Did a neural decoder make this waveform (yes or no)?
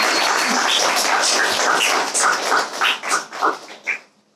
no